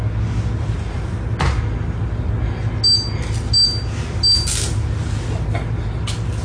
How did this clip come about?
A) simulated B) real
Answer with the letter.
B